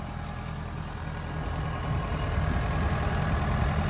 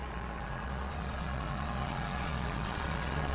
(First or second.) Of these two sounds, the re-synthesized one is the second